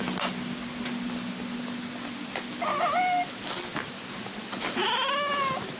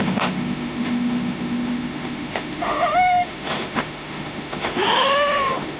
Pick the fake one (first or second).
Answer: second